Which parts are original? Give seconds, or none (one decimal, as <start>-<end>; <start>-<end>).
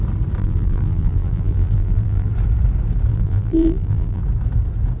0.0-0.4; 2.3-3.1; 4.2-5.0